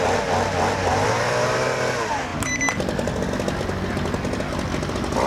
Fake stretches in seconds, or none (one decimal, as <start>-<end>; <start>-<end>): 0.9-1.6